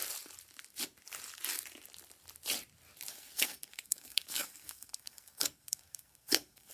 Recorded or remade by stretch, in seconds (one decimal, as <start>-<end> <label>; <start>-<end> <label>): 0.0-3.1 recorded; 3.1-6.7 remade